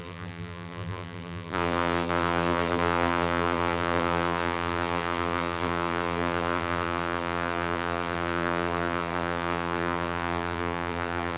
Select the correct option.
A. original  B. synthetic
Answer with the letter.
B